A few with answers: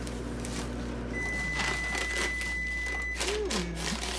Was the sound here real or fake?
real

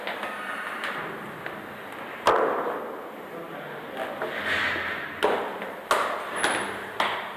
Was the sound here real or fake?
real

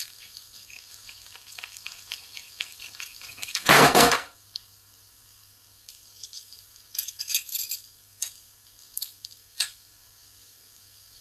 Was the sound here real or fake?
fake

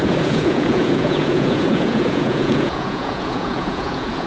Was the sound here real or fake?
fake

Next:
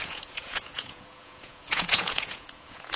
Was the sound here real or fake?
fake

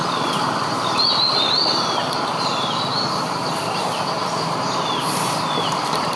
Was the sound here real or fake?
real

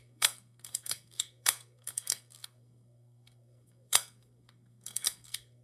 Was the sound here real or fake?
fake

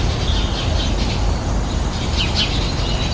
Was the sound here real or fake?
real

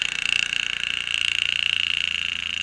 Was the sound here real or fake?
real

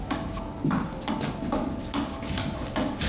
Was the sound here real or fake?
real